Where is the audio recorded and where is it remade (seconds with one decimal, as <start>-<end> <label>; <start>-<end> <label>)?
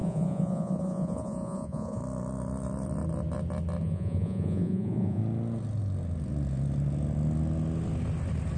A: 0.0-2.0 remade; 2.0-3.8 recorded; 3.8-5.2 remade; 5.2-8.6 recorded